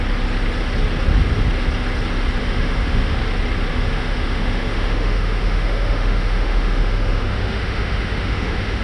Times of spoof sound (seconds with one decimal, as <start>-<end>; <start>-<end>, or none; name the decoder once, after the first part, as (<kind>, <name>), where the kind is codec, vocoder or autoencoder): 2.4-3.2 (autoencoder, DAC-VAE); 3.7-8.8